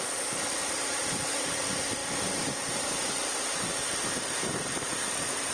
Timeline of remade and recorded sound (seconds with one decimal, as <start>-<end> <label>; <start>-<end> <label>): 0.0-5.5 recorded